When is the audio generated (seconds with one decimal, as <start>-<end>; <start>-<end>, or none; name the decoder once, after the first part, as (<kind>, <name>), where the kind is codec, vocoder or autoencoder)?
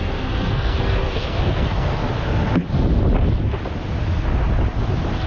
0.0-2.0 (codec, SNAC)